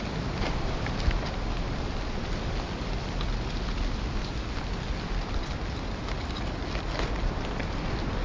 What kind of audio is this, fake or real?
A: real